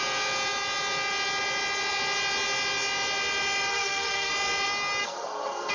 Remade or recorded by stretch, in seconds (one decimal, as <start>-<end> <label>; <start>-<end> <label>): 0.0-3.7 recorded; 3.7-4.3 remade; 4.3-5.0 recorded; 5.0-5.7 remade